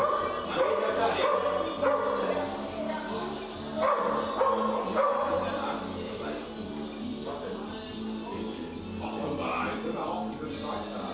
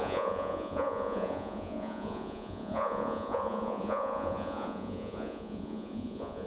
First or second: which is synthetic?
second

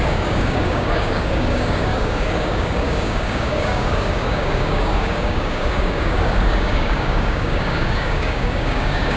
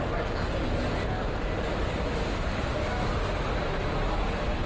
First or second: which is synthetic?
first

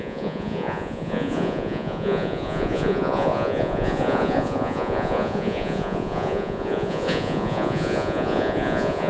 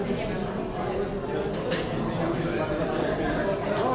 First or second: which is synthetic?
first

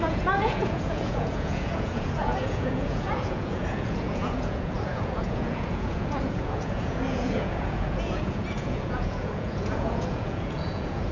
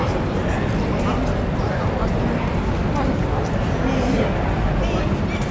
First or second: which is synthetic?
first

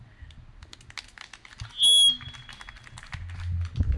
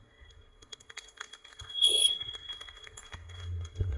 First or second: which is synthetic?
second